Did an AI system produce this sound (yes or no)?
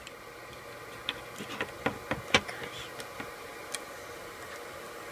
no